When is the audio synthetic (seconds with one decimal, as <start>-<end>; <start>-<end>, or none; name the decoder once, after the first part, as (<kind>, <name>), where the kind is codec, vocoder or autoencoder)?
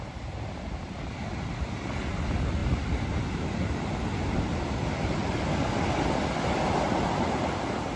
none